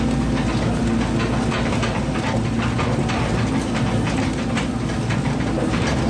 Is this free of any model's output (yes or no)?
yes